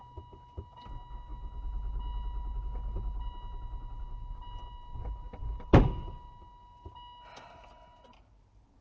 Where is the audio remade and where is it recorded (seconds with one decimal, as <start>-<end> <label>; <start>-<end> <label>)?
0.0-8.8 recorded